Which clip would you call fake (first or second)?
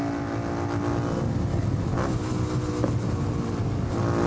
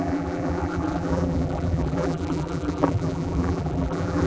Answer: second